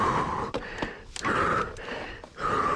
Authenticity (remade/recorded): recorded